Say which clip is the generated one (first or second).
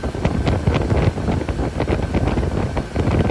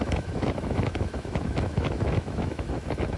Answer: second